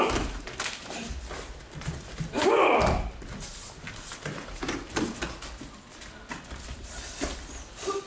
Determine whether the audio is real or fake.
real